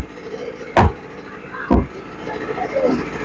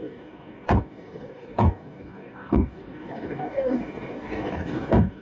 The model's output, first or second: second